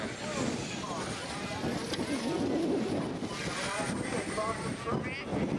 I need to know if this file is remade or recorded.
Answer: recorded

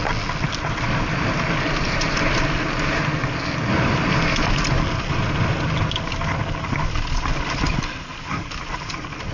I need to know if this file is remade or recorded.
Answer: recorded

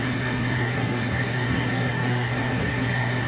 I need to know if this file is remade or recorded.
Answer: remade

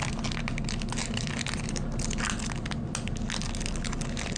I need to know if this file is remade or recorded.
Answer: recorded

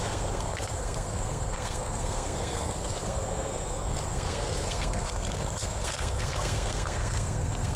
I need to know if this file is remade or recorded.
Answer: remade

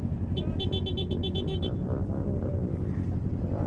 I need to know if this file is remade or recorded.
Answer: recorded